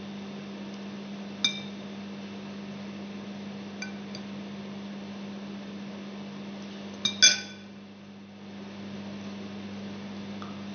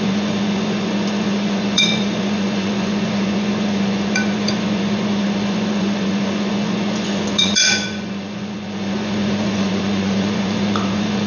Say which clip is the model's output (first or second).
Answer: second